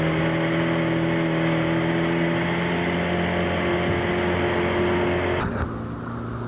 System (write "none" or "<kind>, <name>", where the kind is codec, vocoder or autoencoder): none